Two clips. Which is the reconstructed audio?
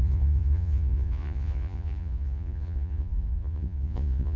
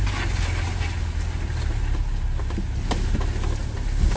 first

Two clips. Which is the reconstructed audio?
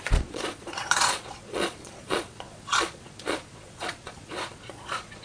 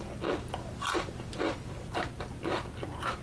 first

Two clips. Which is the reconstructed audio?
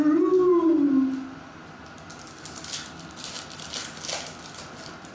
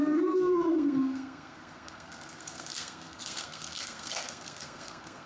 second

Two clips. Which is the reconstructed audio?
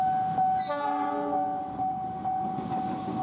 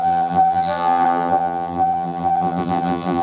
second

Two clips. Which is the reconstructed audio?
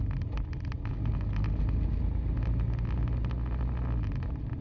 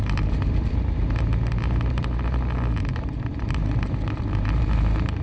second